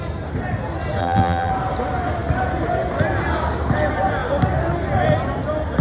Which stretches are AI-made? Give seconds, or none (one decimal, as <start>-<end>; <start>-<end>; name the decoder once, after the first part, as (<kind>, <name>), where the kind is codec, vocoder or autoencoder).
1.0-1.5 (vocoder, BigVGAN v2)